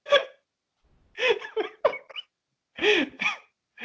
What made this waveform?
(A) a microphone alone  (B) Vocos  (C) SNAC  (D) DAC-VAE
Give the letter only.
A